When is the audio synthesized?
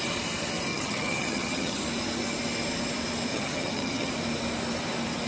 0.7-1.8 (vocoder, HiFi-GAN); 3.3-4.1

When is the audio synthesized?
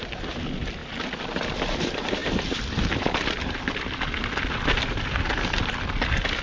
none